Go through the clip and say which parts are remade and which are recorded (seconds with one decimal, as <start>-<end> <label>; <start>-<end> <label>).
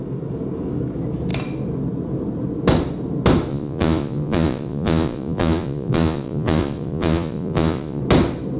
0.0-3.5 recorded; 3.5-8.0 remade; 8.0-8.6 recorded